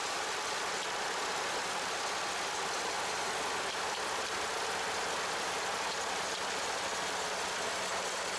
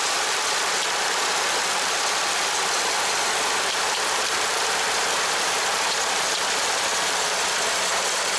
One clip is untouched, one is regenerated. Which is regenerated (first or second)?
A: second